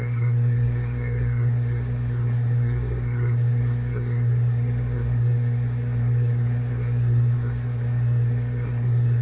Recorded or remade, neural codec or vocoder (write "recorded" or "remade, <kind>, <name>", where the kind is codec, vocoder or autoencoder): remade, codec, SNAC